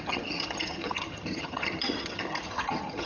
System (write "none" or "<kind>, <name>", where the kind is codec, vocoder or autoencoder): vocoder, HiFi-GAN